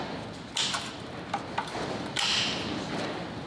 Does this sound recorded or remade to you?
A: recorded